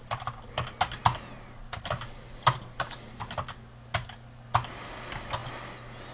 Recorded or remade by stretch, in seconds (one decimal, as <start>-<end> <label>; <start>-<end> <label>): 0.0-6.1 recorded